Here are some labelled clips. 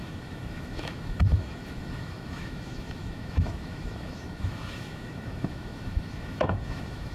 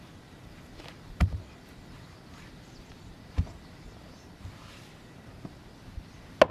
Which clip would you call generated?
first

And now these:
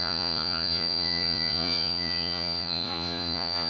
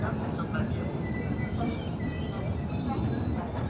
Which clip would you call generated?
first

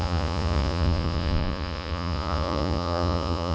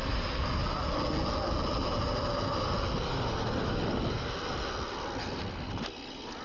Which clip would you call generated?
first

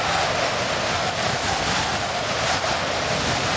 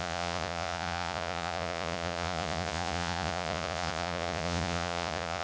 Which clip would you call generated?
second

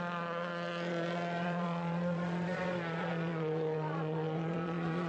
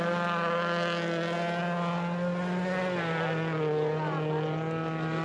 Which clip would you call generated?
first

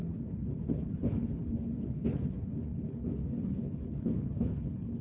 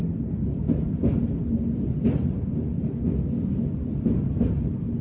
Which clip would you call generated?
first